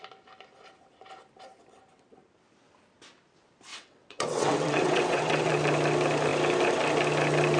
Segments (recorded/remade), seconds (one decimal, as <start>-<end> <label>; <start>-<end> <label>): 0.0-3.7 recorded; 3.7-5.5 remade; 5.5-7.6 recorded